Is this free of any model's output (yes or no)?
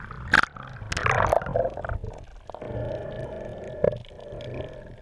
yes